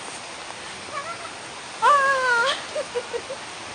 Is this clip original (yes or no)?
yes